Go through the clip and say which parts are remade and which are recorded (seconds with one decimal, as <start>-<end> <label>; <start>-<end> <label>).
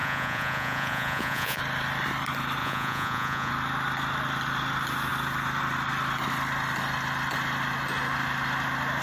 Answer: 0.0-1.6 remade; 1.6-2.6 recorded; 2.6-3.5 remade; 3.5-9.0 recorded